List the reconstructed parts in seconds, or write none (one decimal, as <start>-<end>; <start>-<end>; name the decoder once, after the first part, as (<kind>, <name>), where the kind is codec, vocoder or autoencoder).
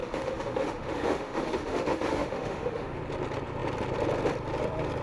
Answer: 0.0-3.0 (autoencoder, DAC-VAE)